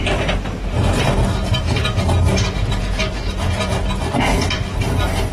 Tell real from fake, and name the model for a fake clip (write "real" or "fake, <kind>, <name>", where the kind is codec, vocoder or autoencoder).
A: real